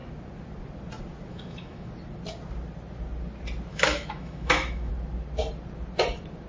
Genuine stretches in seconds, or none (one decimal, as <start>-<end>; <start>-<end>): 0.0-1.3; 1.9-3.7; 4.9-6.5